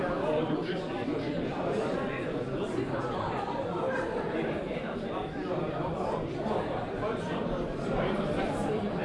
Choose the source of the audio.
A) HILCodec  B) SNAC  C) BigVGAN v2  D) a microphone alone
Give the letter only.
C